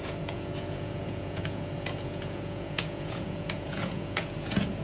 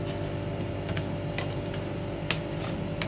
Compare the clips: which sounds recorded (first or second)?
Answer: second